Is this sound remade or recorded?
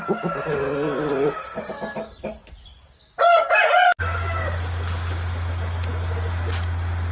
recorded